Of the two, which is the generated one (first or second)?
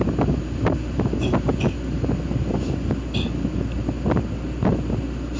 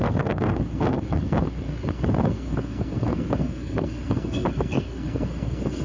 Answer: second